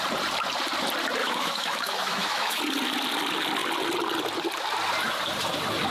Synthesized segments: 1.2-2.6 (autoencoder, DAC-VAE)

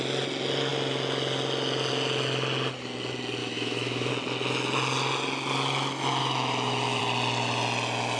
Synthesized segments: 3.4-4.1 (autoencoder, DAC-VAE); 6.2-7.0